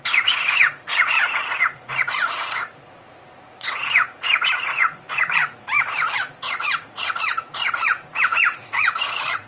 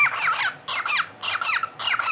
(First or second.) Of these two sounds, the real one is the second